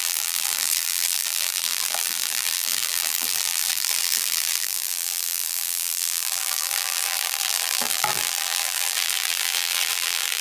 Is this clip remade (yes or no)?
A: yes